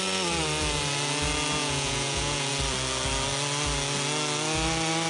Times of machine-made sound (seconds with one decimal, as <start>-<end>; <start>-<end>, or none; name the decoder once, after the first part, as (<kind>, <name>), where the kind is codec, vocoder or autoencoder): 1.6-2.5 (vocoder, Vocos)